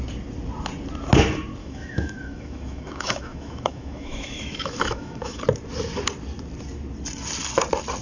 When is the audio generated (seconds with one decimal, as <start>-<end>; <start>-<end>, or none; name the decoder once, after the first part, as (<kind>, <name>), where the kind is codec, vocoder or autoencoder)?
1.6-5.4 (autoencoder, DAC-VAE)